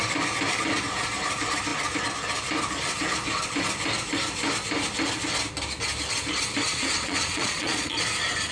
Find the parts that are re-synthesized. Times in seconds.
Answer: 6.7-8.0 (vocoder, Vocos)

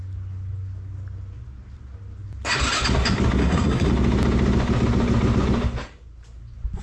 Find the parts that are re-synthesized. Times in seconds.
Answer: 3.4-3.9 (codec, SNAC)

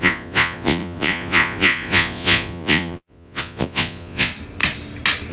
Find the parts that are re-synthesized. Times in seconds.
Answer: 0.0-4.3 (vocoder, Vocos)

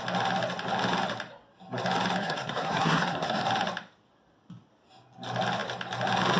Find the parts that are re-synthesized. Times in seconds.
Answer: 2.2-3.5 (codec, SNAC)